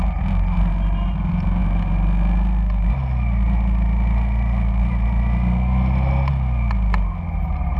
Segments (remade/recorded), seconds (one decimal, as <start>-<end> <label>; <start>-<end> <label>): 0.0-7.8 recorded